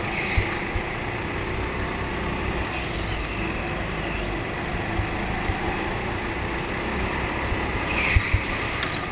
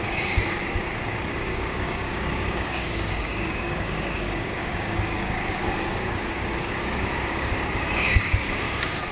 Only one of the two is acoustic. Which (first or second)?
first